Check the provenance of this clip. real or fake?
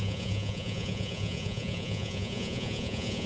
fake